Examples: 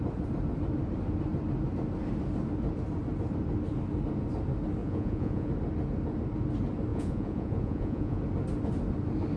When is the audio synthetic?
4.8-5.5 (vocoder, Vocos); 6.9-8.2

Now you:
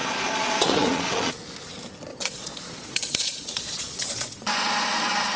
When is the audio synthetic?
0.0-1.3 (vocoder, Vocos); 2.1-5.4

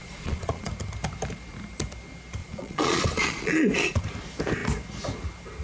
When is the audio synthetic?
0.0-0.7 (vocoder, Vocos); 2.4-4.0

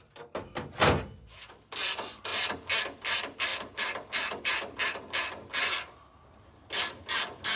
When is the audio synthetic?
none